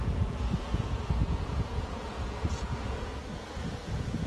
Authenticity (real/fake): fake